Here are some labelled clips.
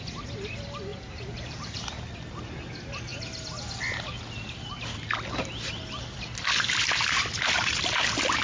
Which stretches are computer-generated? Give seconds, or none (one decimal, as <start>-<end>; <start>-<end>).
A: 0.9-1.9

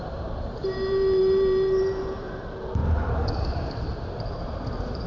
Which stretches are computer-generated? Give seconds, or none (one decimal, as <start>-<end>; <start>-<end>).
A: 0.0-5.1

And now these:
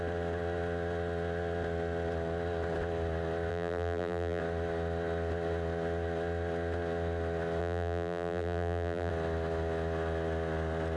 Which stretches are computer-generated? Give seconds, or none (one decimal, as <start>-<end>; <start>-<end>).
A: 3.5-4.4; 7.6-9.1

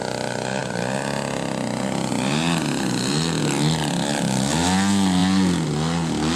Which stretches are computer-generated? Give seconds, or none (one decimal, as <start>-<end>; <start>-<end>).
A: none